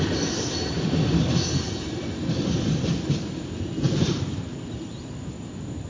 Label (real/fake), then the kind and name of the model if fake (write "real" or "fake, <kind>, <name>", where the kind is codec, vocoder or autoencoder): fake, vocoder, BigVGAN v2